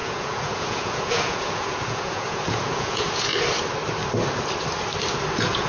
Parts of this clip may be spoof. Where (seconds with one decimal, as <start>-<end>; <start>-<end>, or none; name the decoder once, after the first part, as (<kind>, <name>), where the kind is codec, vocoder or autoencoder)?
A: 0.0-3.3 (vocoder, Vocos); 5.3-5.7